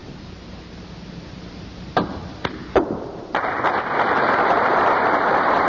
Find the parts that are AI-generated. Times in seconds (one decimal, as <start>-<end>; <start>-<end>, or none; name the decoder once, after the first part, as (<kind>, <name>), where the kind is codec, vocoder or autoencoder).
0.0-5.7 (vocoder, BigVGAN v2)